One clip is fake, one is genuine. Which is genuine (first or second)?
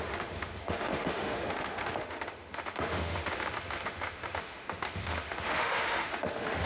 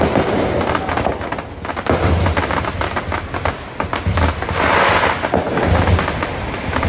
second